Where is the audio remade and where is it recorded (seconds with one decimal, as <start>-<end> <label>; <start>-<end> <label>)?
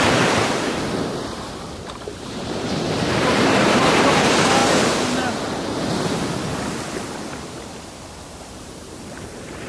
0.0-4.6 remade; 4.6-8.4 recorded; 8.4-9.7 remade